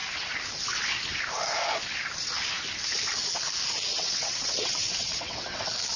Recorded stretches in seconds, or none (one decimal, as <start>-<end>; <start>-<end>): 0.0-3.9; 5.6-6.0